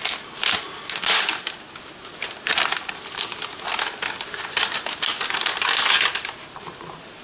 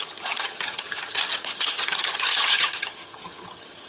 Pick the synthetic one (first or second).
second